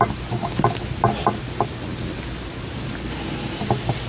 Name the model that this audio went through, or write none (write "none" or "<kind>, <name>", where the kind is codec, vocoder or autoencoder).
none